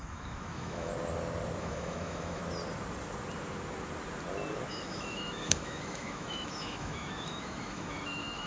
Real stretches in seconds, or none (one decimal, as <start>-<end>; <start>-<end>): 0.9-1.6; 2.4-4.7